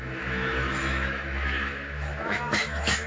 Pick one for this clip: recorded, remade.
remade